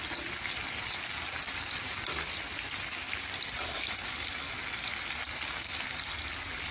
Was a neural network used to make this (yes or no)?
no